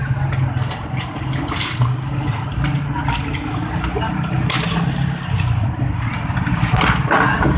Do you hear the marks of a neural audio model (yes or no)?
no